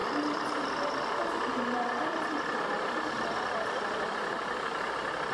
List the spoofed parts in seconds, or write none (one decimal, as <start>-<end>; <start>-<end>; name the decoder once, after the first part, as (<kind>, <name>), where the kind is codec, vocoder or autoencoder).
1.3-5.3 (vocoder, BigVGAN v2)